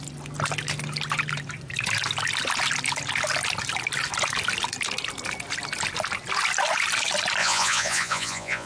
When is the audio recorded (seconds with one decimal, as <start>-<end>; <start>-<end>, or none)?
0.0-7.4